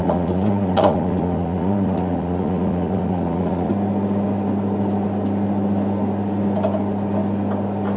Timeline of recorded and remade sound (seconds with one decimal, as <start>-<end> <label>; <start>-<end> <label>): 0.0-3.7 remade; 3.7-8.0 recorded